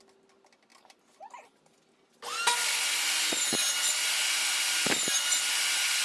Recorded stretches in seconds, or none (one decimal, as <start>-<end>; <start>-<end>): 0.0-6.0